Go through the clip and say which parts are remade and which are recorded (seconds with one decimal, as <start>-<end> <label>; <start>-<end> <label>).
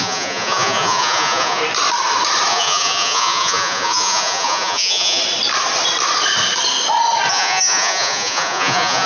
0.0-1.6 remade; 1.6-2.5 recorded; 2.5-5.2 remade; 5.2-7.3 recorded; 7.3-9.1 remade